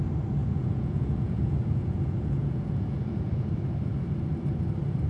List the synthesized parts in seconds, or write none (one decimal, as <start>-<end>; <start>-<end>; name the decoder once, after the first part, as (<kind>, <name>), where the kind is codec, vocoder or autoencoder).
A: 0.4-3.5 (vocoder, Vocos)